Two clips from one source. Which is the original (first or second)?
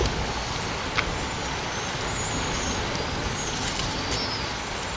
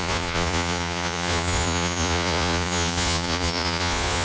first